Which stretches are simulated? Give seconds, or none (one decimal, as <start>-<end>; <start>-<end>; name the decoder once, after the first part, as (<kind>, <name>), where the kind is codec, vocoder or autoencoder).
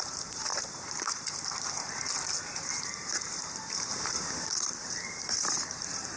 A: 0.0-6.2 (vocoder, BigVGAN v2)